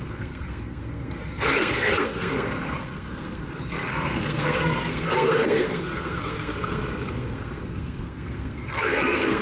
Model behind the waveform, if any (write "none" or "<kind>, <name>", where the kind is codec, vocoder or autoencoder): codec, SNAC